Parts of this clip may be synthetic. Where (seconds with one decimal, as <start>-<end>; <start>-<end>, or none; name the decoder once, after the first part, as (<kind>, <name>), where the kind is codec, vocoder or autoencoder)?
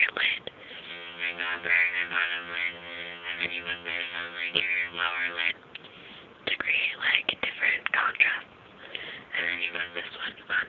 0.9-5.5 (vocoder, HiFi-GAN); 9.4-10.0